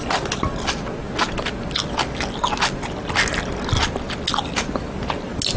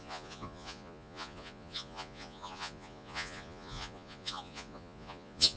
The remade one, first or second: second